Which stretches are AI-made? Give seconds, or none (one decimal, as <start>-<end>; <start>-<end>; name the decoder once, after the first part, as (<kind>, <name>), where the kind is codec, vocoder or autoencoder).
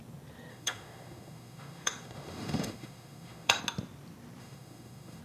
0.5-3.6 (autoencoder, DAC-VAE); 4.4-5.2